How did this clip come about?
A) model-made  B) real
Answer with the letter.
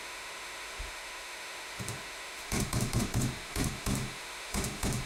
A